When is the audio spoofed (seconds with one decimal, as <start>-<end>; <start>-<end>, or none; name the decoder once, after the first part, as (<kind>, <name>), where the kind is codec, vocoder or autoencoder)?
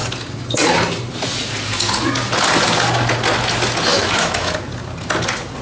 3.9-4.5 (autoencoder, DAC-VAE)